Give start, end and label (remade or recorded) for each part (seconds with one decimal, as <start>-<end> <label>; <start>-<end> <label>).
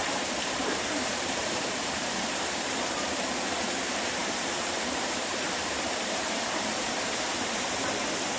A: 0.0-8.4 remade